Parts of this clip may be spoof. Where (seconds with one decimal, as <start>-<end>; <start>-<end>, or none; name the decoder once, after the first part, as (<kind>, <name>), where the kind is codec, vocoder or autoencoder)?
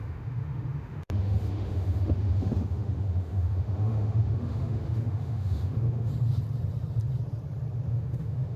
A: 0.0-6.1 (autoencoder, DAC-VAE); 7.9-8.6